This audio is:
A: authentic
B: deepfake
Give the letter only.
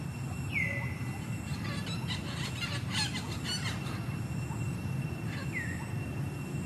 A